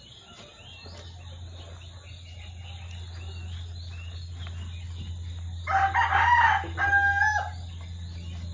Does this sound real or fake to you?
real